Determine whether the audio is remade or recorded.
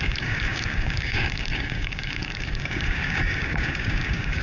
remade